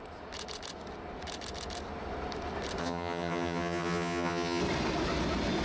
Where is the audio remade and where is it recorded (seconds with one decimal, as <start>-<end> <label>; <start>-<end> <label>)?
0.0-2.8 recorded; 2.8-4.6 remade; 4.6-5.6 recorded